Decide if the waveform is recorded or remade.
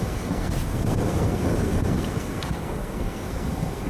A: remade